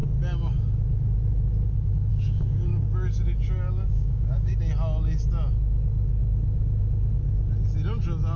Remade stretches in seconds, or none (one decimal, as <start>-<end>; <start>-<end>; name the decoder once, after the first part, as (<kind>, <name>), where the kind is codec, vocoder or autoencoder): 2.1-2.7 (codec, DAC); 3.9-4.5